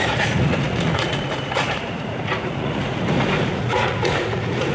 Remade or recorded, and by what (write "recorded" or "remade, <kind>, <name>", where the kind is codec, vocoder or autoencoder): remade, vocoder, Vocos